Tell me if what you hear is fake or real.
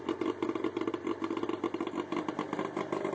real